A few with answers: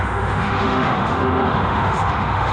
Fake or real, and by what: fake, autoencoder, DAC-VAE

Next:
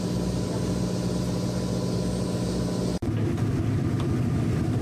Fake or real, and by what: real